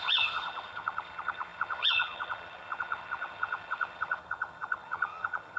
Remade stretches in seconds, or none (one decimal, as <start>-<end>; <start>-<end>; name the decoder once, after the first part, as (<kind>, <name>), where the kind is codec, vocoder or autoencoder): 0.0-5.6 (vocoder, HiFi-GAN)